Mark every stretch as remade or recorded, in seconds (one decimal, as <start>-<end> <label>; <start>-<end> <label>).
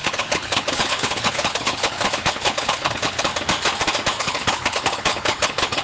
0.0-3.3 remade; 3.3-4.2 recorded; 4.2-5.8 remade